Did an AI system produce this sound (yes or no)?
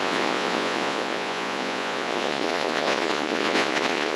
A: yes